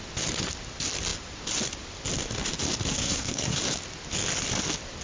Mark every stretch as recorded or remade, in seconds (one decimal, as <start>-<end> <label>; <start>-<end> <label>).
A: 0.0-3.0 recorded; 3.0-3.6 remade; 3.6-5.0 recorded